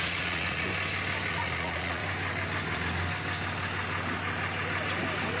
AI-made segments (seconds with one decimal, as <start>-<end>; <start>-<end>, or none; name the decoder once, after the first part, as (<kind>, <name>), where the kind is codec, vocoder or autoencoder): 0.0-0.7 (vocoder, Vocos); 1.3-2.0